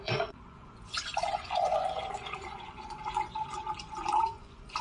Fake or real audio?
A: fake